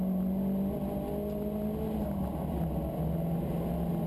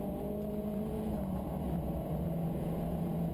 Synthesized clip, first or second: second